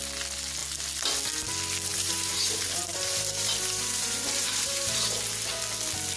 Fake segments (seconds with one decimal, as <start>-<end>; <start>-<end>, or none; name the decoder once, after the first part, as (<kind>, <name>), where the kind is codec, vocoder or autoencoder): 1.9-5.2 (vocoder, BigVGAN v2)